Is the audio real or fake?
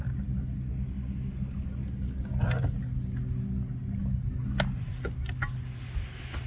real